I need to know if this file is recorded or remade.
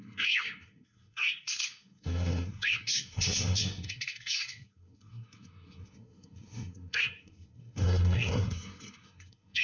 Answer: remade